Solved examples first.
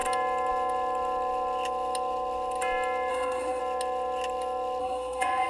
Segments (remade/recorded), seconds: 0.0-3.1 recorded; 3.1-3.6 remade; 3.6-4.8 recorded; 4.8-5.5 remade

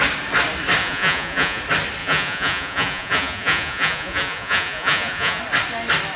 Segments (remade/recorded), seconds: 0.0-0.8 recorded; 0.8-1.6 remade; 1.6-2.0 recorded; 2.0-5.4 remade; 5.4-6.2 recorded

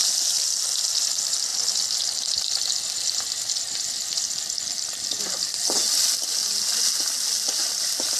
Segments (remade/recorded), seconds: 0.0-4.0 recorded; 4.0-5.2 remade; 5.2-8.2 recorded

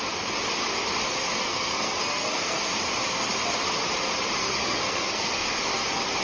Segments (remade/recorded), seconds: 0.0-1.4 recorded; 1.4-2.6 remade; 2.6-4.4 recorded; 4.4-5.6 remade; 5.6-6.2 recorded